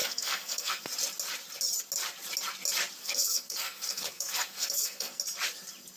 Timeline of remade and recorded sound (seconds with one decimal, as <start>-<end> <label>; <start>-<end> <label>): 0.0-0.8 remade; 0.8-3.0 recorded; 3.0-5.2 remade; 5.2-6.0 recorded